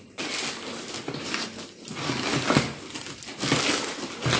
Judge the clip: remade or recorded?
recorded